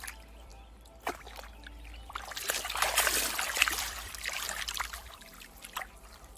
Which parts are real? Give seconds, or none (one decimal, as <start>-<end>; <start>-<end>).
0.5-3.6